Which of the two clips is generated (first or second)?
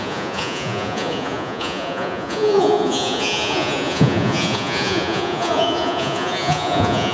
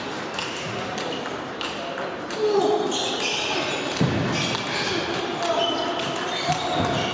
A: first